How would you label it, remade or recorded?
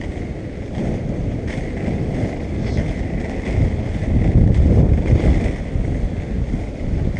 remade